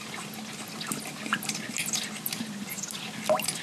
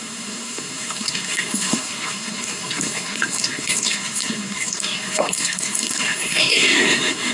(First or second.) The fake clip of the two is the second